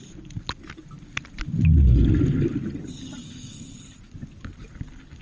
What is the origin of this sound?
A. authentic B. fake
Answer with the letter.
A